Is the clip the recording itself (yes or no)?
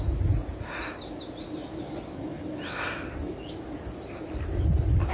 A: yes